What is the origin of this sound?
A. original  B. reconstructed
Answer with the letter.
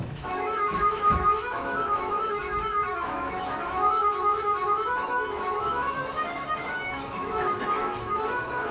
B